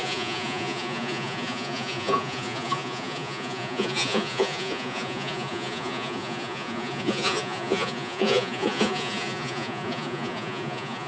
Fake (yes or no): yes